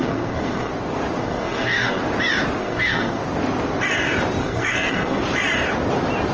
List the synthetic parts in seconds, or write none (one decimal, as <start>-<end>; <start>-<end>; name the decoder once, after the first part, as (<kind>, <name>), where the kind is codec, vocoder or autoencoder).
0.0-0.7 (codec, SNAC); 1.2-2.0; 2.6-3.2; 4.4-5.2